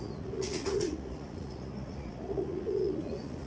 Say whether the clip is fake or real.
fake